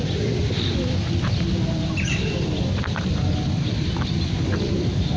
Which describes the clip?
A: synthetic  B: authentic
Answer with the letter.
B